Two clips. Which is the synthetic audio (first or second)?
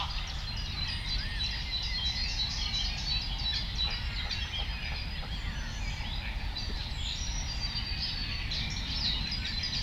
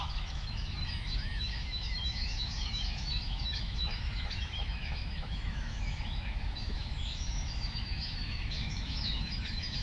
second